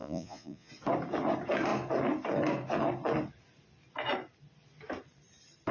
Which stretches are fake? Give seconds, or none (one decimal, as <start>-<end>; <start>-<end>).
0.0-0.7